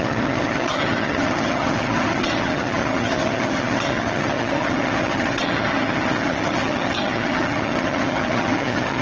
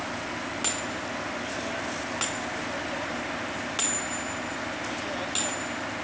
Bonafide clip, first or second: second